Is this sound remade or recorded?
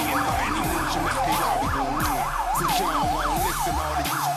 remade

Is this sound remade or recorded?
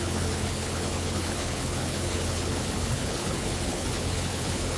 remade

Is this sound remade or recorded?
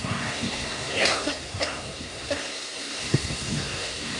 remade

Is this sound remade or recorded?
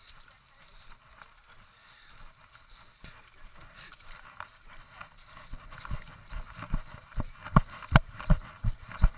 recorded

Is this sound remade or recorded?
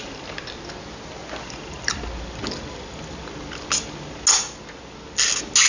recorded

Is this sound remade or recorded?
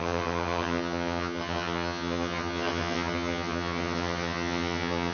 remade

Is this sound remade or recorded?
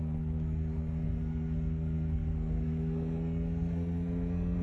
remade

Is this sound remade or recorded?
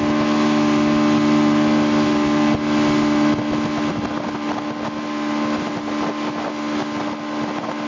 recorded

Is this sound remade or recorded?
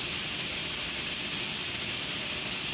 recorded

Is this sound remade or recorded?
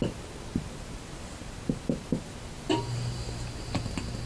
recorded